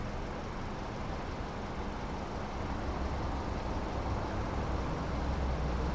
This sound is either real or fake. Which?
real